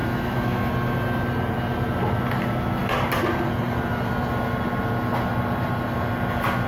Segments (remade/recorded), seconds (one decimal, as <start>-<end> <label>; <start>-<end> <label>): 0.0-0.7 remade; 0.7-6.7 recorded